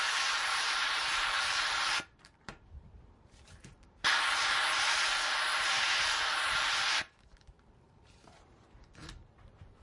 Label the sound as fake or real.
fake